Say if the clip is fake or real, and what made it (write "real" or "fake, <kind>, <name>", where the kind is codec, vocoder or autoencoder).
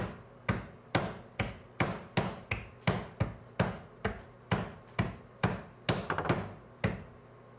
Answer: real